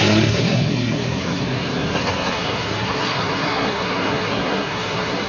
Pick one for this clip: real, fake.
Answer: fake